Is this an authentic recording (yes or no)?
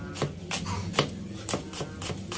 yes